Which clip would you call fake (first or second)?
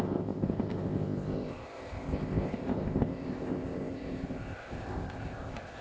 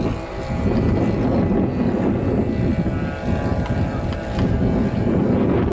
first